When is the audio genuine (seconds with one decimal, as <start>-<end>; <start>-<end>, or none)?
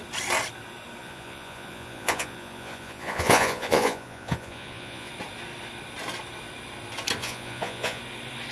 0.0-1.0; 5.1-7.2; 8.0-8.5